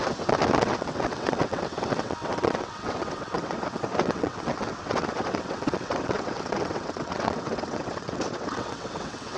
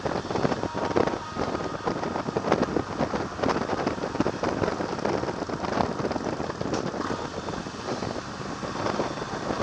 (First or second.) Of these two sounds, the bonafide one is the second